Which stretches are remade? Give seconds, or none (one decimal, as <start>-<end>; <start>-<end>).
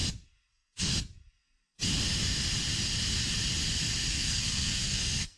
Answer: 0.5-0.9; 4.1-5.4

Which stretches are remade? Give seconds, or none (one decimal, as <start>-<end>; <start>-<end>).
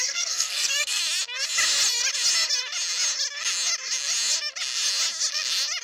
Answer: 0.0-1.0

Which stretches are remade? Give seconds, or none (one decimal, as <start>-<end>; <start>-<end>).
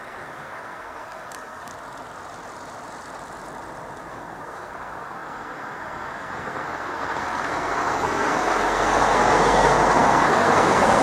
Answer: 0.0-1.7; 4.1-11.0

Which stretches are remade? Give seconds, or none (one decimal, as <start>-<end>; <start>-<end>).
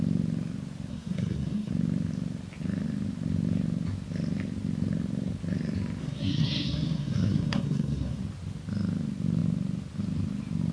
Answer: 0.9-1.7; 6.0-8.2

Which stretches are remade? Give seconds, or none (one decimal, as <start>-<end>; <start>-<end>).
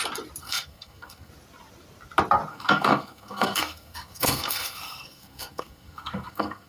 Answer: 0.4-1.3; 2.5-6.7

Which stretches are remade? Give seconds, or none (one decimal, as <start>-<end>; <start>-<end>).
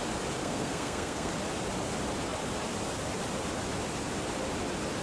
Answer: 0.4-1.3